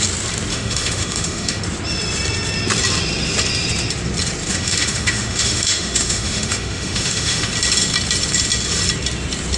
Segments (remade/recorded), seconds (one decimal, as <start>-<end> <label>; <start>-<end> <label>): 0.0-0.5 recorded; 0.5-1.6 remade; 1.6-4.5 recorded; 4.5-7.5 remade; 7.5-9.6 recorded